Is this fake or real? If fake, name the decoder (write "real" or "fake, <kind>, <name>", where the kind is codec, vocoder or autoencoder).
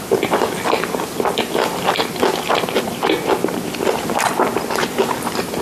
real